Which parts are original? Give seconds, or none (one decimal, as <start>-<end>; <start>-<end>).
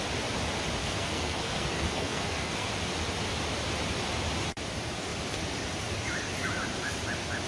0.0-0.8; 2.7-7.5